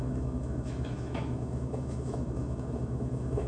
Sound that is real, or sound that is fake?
fake